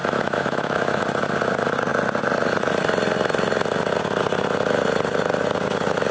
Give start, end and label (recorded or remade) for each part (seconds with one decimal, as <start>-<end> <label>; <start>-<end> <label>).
0.0-1.0 remade; 1.0-6.1 recorded